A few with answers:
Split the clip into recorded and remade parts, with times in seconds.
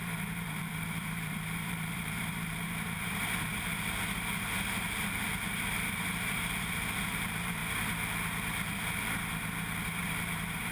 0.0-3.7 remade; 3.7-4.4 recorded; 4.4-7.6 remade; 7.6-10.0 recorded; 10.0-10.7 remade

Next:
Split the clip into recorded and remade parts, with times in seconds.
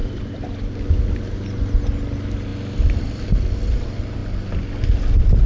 0.0-0.7 remade; 0.7-2.5 recorded; 2.5-3.3 remade; 3.3-5.5 recorded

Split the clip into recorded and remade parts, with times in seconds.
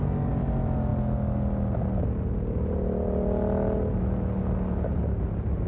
0.0-5.7 recorded